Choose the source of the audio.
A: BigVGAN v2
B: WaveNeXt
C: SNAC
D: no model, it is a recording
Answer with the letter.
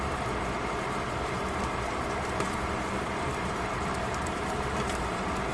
A